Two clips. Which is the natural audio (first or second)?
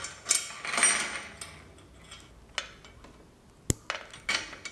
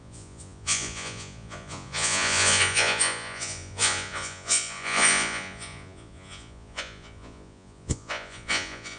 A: first